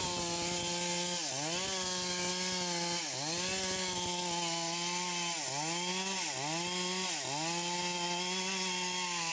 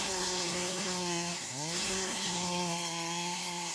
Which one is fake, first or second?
second